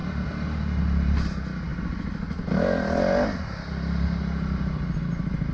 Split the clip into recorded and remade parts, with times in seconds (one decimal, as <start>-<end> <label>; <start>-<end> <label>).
0.0-5.5 recorded